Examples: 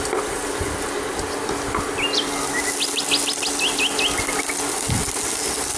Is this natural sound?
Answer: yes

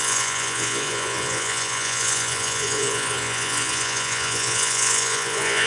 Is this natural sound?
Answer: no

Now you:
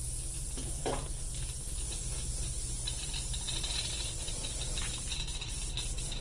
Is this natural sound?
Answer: yes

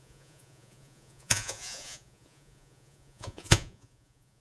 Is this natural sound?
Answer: no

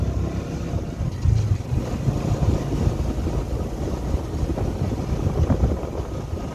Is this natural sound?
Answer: yes